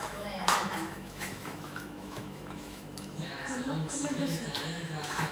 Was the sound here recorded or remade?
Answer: remade